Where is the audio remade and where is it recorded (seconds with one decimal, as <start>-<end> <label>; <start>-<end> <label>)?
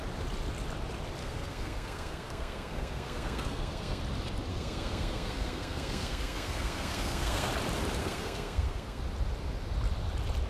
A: 0.0-1.2 recorded; 1.2-4.0 remade; 4.0-4.5 recorded; 4.5-7.5 remade; 7.5-8.0 recorded; 8.0-9.0 remade; 9.0-10.5 recorded